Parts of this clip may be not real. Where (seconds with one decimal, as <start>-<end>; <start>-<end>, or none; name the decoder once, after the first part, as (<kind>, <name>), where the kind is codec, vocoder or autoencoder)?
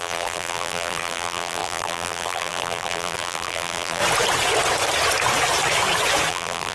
0.0-4.0 (vocoder, BigVGAN v2); 6.3-6.7